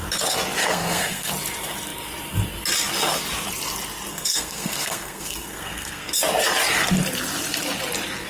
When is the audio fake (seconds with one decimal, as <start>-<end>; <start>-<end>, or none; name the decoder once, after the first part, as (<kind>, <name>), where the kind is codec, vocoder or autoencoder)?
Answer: 0.6-1.3 (codec, SNAC); 4.1-6.1